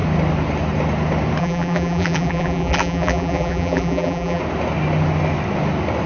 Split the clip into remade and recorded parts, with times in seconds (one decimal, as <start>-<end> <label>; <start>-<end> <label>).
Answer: 0.0-1.4 recorded; 1.4-4.4 remade; 4.4-6.1 recorded